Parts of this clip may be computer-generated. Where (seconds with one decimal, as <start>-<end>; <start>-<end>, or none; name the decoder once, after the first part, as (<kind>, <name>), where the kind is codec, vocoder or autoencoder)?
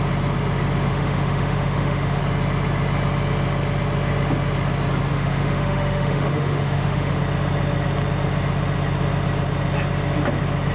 0.9-2.2 (autoencoder, DAC-VAE); 5.1-7.2